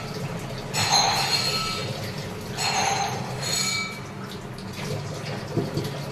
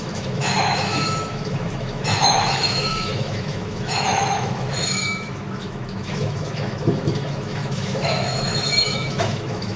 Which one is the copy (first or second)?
second